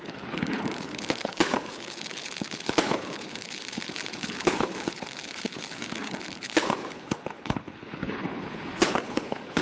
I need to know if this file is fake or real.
fake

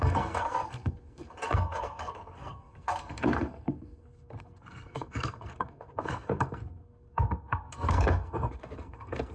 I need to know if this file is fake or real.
fake